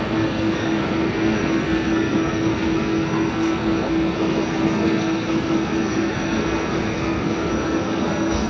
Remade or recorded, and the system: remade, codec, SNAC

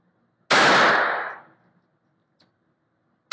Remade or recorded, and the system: recorded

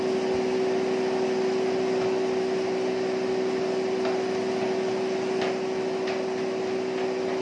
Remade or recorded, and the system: recorded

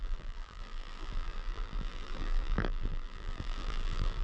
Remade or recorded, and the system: remade, vocoder, BigVGAN v2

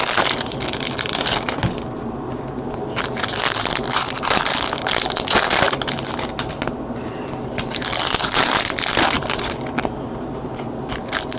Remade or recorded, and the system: recorded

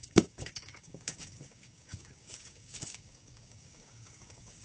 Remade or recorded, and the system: remade, codec, DAC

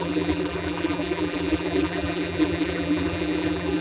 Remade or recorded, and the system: remade, vocoder, BigVGAN v2